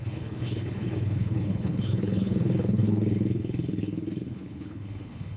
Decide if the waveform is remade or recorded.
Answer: remade